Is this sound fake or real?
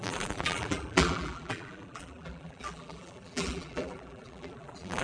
fake